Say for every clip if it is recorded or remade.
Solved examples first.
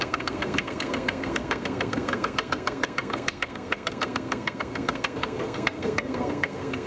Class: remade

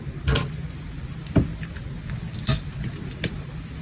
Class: recorded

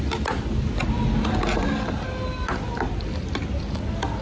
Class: recorded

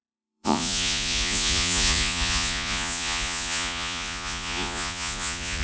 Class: remade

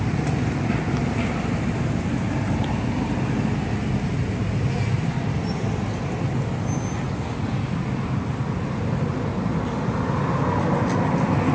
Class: recorded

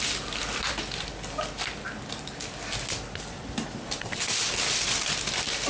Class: recorded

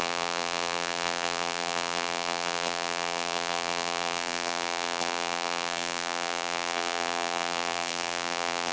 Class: remade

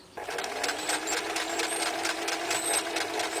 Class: recorded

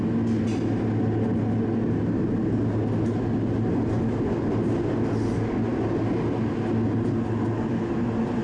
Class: recorded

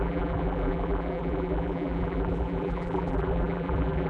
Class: remade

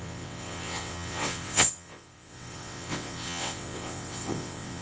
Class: remade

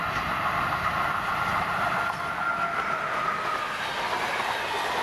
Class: recorded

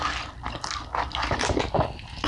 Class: recorded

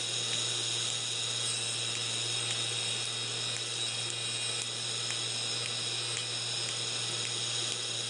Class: recorded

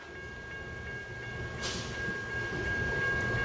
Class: recorded